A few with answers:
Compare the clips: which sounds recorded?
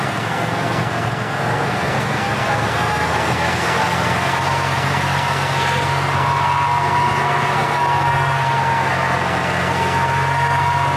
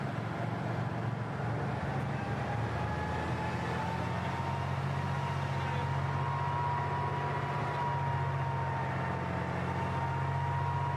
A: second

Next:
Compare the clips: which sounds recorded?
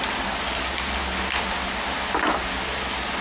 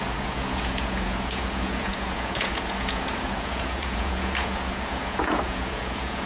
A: first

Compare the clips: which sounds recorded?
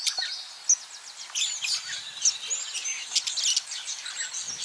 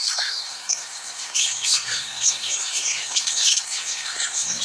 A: first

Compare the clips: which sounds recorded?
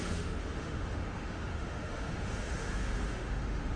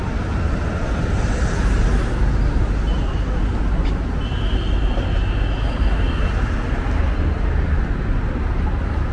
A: second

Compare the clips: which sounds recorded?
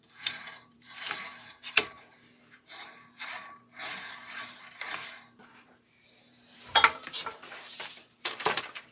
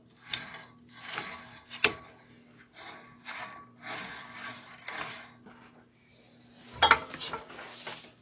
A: second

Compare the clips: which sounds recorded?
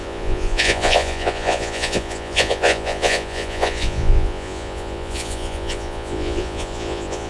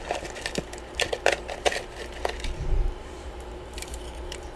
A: second